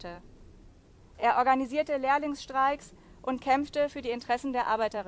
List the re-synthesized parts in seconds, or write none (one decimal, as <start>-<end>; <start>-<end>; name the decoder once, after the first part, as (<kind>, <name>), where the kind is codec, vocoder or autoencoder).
0.0-1.2 (vocoder, BigVGAN v2); 3.9-5.1